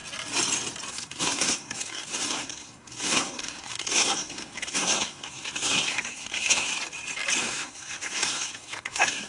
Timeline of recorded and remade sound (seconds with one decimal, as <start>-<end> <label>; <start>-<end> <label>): 0.0-0.9 recorded; 0.9-6.7 remade; 6.7-7.4 recorded; 7.4-9.3 remade